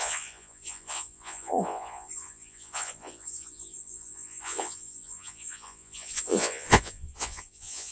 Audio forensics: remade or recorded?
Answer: remade